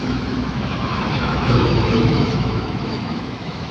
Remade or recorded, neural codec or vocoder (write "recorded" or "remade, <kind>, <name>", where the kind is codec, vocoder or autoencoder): remade, autoencoder, DAC-VAE